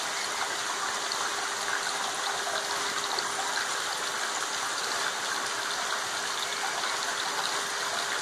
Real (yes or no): yes